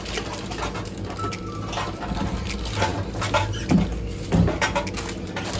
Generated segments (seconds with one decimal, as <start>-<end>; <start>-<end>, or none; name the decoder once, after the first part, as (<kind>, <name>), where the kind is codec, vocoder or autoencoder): none

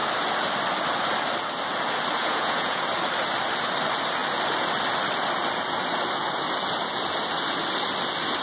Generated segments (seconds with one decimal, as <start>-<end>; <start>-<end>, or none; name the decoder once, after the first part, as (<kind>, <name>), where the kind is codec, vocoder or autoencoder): 2.2-2.8 (vocoder, Vocos)

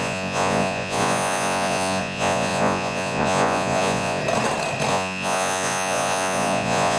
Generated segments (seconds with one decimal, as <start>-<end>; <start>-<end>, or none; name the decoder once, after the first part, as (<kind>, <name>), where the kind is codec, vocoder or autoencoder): 0.0-4.2 (vocoder, Vocos); 4.9-7.0

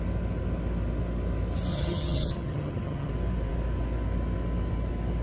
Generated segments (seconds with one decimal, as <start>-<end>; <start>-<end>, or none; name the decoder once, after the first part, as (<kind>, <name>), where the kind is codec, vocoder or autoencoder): 1.7-3.1 (vocoder, HiFi-GAN)